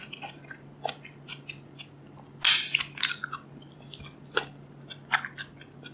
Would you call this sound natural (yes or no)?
yes